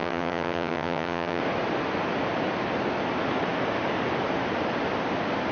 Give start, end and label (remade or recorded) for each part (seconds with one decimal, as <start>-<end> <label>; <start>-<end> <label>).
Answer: 0.0-1.4 remade; 1.4-5.5 recorded